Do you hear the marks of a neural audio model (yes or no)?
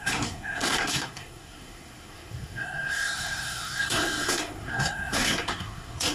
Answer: yes